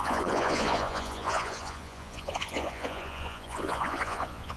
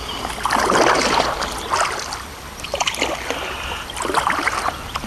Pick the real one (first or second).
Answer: second